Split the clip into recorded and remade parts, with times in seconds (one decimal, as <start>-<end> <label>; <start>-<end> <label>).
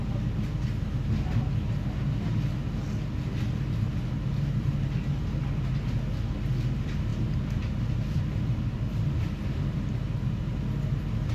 0.0-11.3 recorded